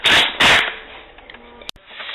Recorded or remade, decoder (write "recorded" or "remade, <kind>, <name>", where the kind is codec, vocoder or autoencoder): recorded